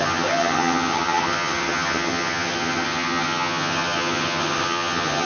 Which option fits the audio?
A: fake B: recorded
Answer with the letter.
A